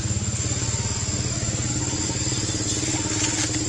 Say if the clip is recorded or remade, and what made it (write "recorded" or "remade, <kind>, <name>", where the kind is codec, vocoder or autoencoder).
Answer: recorded